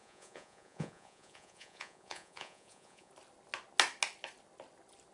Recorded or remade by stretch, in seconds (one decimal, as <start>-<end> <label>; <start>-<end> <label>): 0.0-3.1 remade; 3.1-5.1 recorded